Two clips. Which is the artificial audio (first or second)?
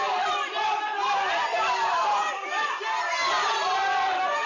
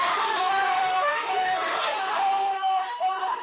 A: second